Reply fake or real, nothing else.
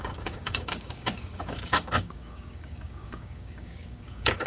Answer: fake